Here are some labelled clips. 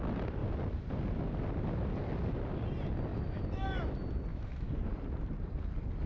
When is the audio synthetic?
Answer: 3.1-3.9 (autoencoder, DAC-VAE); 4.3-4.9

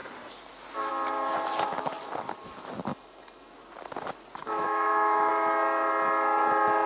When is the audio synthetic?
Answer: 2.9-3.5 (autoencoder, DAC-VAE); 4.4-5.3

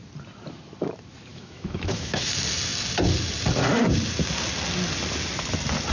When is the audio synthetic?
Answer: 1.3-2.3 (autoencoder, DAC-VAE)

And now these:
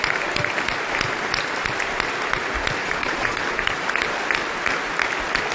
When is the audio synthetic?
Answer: 2.8-3.4 (vocoder, Vocos)

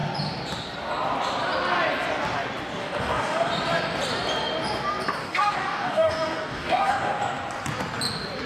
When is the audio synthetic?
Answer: 2.8-3.5 (codec, DAC); 5.2-7.2

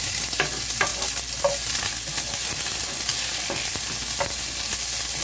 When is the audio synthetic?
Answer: none